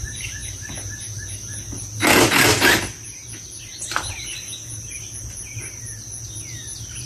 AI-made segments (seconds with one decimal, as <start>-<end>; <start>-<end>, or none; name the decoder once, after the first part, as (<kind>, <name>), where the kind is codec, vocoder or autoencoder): none